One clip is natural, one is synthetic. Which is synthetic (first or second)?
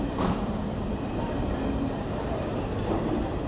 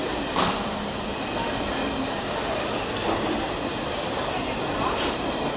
first